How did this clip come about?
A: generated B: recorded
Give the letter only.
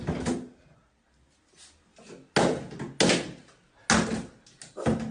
B